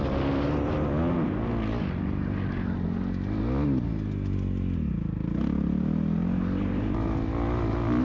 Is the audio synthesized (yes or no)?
no